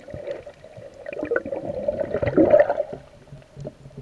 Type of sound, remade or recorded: recorded